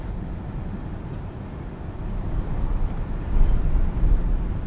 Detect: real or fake real